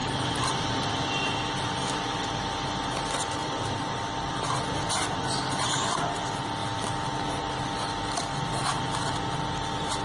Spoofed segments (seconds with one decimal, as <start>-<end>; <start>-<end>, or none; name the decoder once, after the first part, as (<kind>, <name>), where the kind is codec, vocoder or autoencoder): 0.0-0.5 (vocoder, BigVGAN v2); 3.4-4.9